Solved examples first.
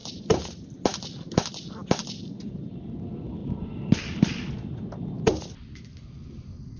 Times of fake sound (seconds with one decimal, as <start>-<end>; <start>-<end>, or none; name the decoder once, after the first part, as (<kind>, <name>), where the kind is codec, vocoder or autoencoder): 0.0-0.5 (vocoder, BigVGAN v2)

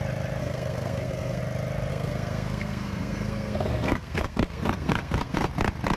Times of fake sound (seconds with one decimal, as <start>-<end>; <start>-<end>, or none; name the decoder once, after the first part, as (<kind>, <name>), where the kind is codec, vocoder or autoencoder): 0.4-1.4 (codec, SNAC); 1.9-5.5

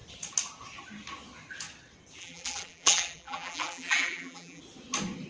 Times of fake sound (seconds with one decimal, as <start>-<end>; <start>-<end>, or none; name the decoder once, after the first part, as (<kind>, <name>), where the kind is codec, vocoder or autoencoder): 2.2-4.6 (vocoder, BigVGAN v2)

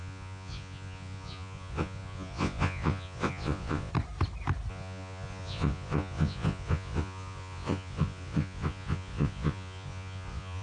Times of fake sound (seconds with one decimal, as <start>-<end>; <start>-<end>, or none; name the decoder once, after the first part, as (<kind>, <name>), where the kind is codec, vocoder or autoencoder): 0.0-3.9 (vocoder, Vocos); 4.7-10.6

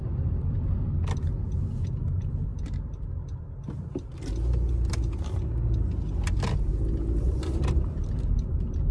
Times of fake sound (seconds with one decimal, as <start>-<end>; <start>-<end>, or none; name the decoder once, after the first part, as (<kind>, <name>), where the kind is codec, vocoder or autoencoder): none

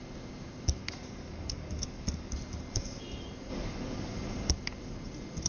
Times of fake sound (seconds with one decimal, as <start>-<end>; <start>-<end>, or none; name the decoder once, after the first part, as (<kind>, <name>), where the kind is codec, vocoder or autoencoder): 0.8-2.3 (codec, DAC); 3.5-4.5

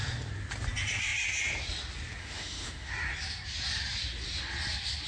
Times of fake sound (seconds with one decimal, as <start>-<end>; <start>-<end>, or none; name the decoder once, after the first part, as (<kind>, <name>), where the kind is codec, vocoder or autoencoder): 2.2-2.9 (autoencoder, DAC-VAE)

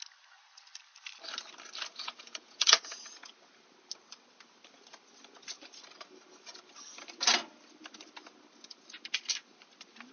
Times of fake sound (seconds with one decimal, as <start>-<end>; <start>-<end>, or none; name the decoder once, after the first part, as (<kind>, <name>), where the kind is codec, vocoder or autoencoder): 1.9-3.3 (vocoder, Vocos)